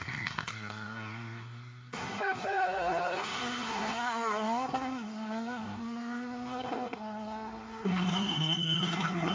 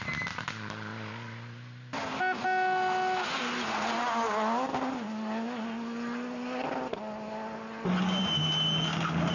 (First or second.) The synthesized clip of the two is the first